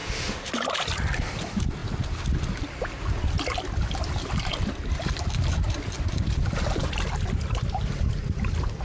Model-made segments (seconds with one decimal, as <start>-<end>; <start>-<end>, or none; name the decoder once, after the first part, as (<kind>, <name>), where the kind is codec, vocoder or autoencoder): 0.0-0.5 (autoencoder, DAC-VAE)